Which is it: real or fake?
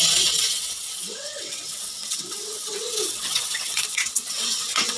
fake